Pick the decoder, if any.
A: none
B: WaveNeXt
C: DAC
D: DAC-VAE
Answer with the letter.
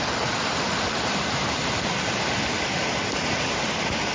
A